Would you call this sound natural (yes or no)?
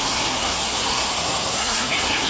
no